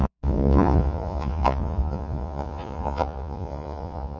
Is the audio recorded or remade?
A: remade